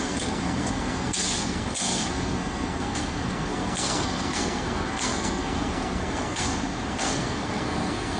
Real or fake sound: fake